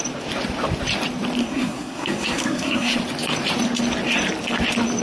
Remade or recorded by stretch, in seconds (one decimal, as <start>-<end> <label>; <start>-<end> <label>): 0.0-1.4 recorded; 1.4-3.0 remade; 3.0-5.0 recorded